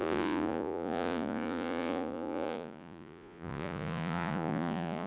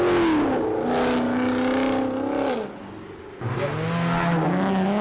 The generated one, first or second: first